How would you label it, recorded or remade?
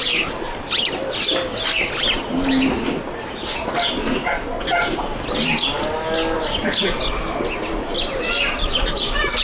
recorded